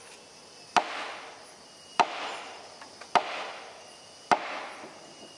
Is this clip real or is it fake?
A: real